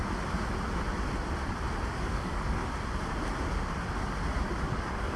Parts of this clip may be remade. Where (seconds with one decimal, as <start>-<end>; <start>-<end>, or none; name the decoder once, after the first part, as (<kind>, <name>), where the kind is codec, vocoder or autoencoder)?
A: 1.9-2.6 (codec, DAC); 4.6-5.2